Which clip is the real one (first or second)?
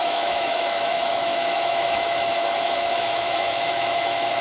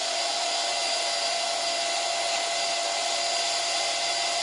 second